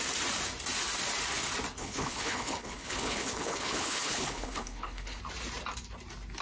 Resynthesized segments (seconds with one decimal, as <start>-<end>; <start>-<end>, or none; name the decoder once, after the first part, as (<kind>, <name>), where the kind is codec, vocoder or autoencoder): 1.8-5.2 (codec, HILCodec)